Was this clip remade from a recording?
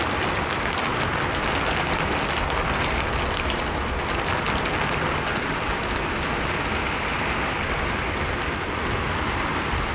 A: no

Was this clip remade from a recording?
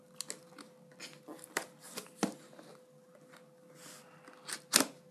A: no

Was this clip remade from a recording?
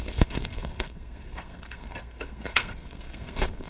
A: yes